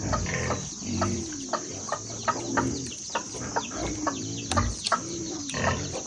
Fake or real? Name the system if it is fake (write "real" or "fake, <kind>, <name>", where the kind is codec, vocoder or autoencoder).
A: real